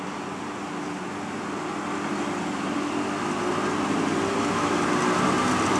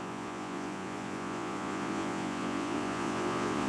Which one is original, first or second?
first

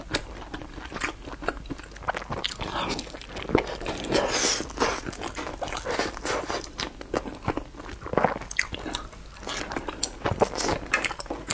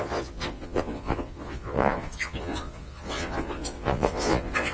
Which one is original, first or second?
first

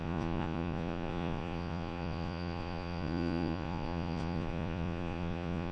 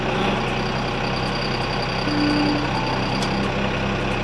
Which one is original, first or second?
second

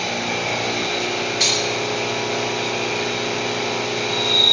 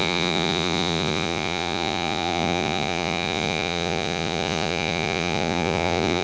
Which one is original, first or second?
first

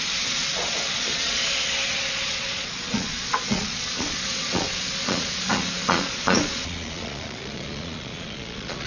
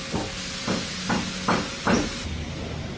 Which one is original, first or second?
second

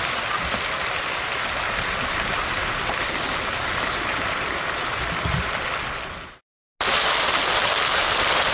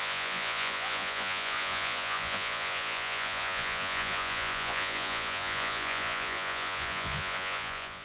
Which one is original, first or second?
first